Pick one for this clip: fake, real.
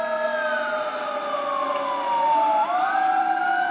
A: real